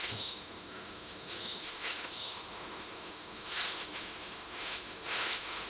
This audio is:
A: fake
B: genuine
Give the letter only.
A